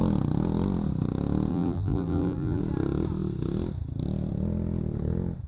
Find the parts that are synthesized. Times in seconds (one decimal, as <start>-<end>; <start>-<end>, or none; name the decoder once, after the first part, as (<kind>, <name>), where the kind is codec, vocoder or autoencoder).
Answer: 1.5-2.6 (vocoder, BigVGAN v2)